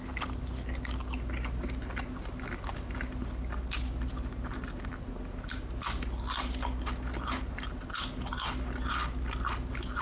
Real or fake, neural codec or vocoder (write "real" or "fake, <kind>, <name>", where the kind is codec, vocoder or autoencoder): real